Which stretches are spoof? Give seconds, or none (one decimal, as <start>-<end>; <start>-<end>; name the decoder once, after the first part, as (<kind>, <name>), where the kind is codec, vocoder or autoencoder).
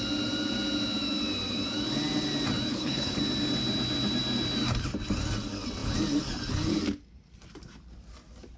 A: 2.7-3.2 (codec, HILCodec)